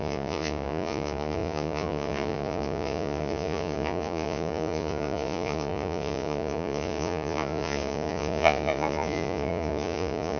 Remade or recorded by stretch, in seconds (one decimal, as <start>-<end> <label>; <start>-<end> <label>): 0.0-10.4 remade